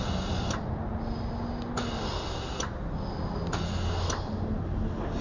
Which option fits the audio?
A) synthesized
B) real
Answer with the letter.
B